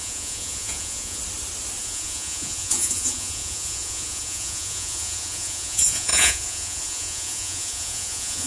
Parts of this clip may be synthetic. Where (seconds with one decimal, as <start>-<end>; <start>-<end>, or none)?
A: 0.0-1.2; 1.8-8.5

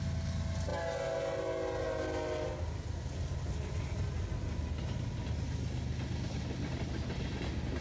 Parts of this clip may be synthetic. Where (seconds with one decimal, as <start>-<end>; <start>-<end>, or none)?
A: none

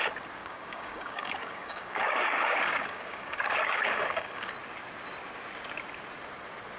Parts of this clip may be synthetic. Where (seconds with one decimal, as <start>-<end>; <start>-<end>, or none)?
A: 0.4-4.5

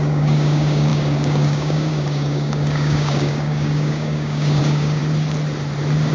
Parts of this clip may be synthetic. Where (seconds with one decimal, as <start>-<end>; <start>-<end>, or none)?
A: 0.0-5.0

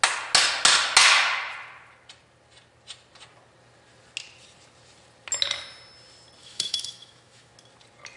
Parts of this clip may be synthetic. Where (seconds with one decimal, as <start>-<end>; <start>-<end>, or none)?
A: 6.4-7.5

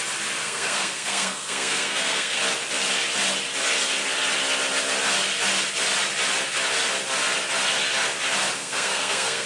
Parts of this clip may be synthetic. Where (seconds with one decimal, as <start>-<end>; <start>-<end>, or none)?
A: 0.4-2.4; 8.6-9.5